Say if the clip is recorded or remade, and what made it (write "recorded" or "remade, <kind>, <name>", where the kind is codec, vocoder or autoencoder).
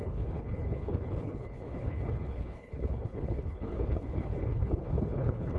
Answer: remade, codec, HILCodec